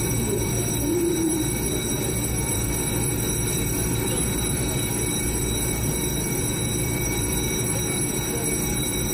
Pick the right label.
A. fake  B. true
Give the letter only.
A